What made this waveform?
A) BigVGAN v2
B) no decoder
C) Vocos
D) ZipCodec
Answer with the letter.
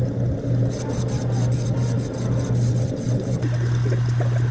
B